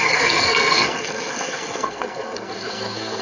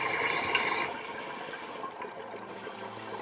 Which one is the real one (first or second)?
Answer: second